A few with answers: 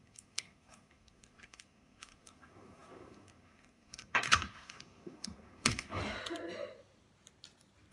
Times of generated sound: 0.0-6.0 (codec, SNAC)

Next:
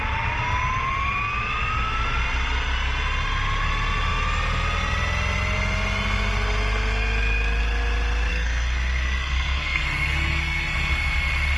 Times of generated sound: 8.3-11.6 (codec, SNAC)

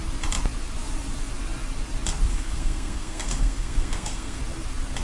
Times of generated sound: 2.3-4.4 (codec, SNAC)